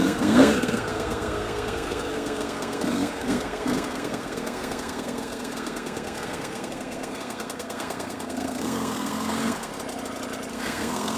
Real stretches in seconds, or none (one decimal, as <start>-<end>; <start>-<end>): 9.7-10.5